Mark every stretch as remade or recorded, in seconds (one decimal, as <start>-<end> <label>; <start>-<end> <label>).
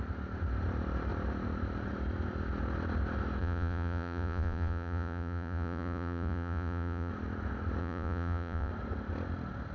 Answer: 0.0-3.4 recorded; 3.4-7.1 remade; 7.1-7.8 recorded; 7.8-8.7 remade; 8.7-9.7 recorded